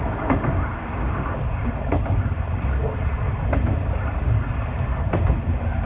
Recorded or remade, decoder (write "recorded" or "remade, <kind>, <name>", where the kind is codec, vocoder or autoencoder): recorded